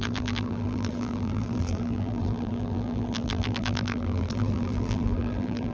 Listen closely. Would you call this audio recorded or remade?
remade